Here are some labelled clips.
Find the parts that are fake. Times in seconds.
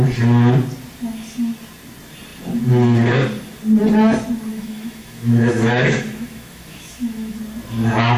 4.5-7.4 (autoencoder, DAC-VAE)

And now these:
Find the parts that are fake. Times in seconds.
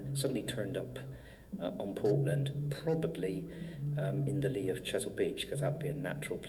0.0-6.5 (autoencoder, DAC-VAE)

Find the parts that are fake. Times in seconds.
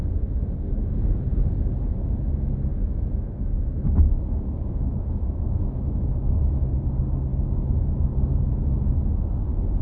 2.7-6.6 (autoencoder, DAC-VAE); 7.3-7.9